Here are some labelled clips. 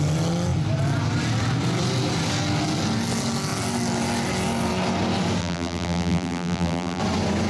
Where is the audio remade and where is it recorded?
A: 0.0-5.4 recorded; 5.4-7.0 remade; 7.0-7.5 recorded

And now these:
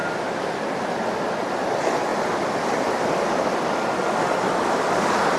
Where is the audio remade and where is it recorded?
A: 0.0-0.8 remade; 0.8-2.1 recorded; 2.1-2.7 remade; 2.7-5.4 recorded

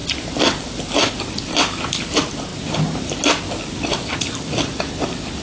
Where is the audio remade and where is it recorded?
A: 0.0-1.1 recorded; 1.1-5.4 remade

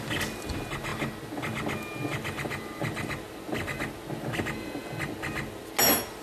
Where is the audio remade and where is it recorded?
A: 0.0-6.2 recorded

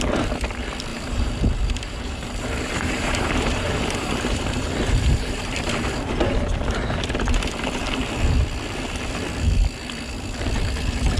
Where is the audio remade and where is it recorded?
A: 0.0-0.9 recorded; 0.9-6.1 remade; 6.1-11.2 recorded

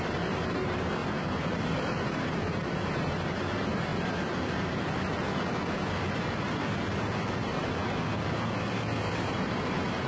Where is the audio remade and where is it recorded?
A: 0.0-3.9 remade; 3.9-7.3 recorded; 7.3-7.8 remade; 7.8-9.0 recorded; 9.0-10.1 remade

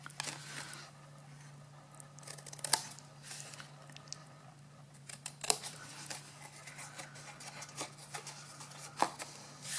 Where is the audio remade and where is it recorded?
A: 0.0-4.2 recorded; 4.2-5.9 remade; 5.9-9.8 recorded

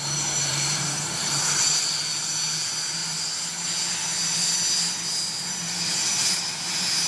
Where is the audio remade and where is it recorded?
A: 0.0-0.5 recorded; 0.5-2.0 remade; 2.0-7.1 recorded